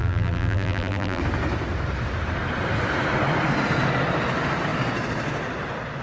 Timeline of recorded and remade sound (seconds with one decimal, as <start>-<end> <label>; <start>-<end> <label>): 0.0-1.2 remade; 1.2-6.0 recorded